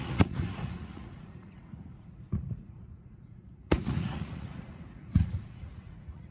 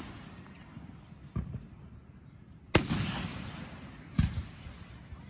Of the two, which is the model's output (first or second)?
first